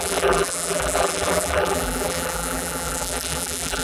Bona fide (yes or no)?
no